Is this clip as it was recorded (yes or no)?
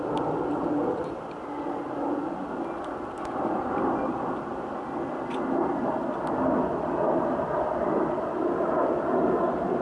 yes